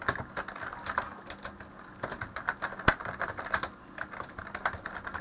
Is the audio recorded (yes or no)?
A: yes